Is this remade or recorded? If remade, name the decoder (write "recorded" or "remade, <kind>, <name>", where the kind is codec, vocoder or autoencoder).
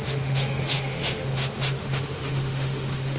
remade, autoencoder, DAC-VAE